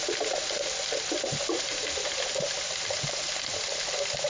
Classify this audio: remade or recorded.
recorded